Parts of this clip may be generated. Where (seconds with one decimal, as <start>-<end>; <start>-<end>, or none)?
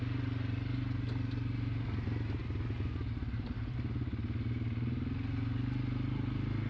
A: none